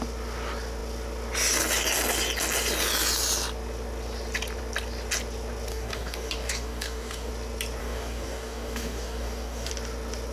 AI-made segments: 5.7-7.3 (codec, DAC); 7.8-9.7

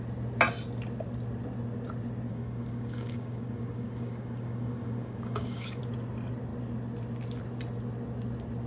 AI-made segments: 2.3-5.8 (codec, DAC)

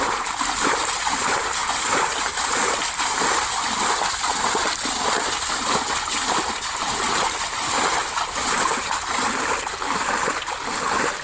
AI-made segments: none

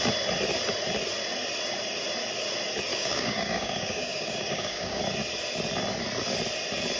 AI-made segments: 2.9-5.0 (codec, DAC)

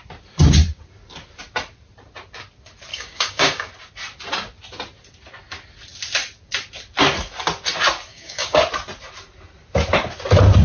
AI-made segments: 2.9-3.7 (codec, DAC); 8.1-8.6

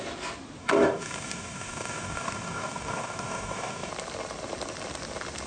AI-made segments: 0.6-3.9 (codec, DAC)

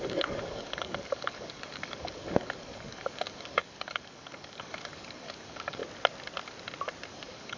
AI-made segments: 0.0-5.8 (codec, DAC); 7.1-7.6

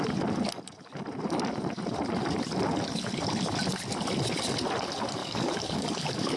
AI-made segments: 5.2-6.4 (codec, DAC)